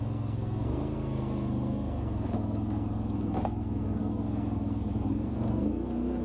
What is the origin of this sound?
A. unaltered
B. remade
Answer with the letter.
B